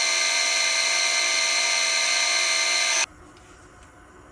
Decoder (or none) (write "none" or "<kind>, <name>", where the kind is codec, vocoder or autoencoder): none